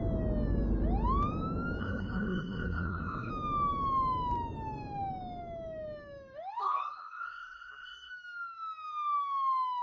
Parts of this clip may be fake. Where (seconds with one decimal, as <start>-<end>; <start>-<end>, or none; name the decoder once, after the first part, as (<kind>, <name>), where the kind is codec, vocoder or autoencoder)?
1.8-3.3 (codec, SNAC); 6.6-8.1